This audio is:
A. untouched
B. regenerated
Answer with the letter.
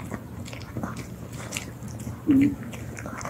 A